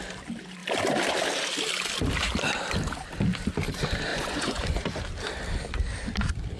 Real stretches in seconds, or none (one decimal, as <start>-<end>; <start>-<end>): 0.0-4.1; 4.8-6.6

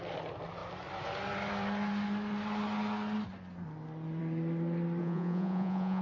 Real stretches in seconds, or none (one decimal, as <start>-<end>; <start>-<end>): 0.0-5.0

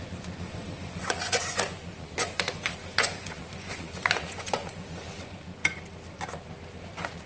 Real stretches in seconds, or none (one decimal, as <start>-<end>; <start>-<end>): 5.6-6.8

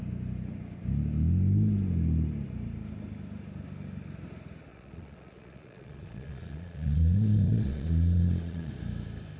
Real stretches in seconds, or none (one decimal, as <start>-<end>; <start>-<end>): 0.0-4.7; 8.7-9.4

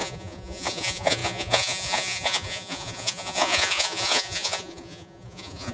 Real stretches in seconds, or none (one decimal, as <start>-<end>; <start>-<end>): none

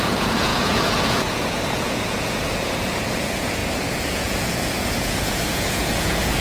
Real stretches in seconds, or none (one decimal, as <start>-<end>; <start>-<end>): none